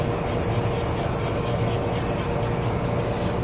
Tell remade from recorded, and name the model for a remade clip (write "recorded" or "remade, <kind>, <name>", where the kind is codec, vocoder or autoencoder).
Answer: recorded